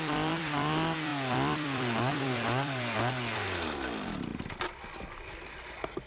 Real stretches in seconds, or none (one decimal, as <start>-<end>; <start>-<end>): 4.3-6.1